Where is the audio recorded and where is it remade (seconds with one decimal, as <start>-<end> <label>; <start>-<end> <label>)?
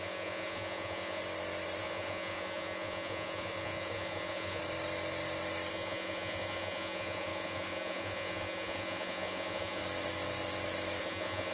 0.0-1.2 remade; 1.2-1.8 recorded; 1.8-4.6 remade; 4.6-5.7 recorded; 5.7-9.8 remade; 9.8-11.0 recorded; 11.0-11.5 remade